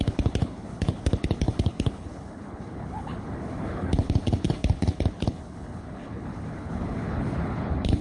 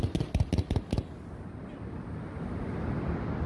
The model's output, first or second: first